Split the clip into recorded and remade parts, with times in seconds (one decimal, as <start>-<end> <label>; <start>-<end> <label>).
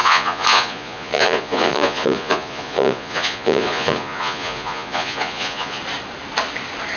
0.0-5.8 remade; 5.8-7.0 recorded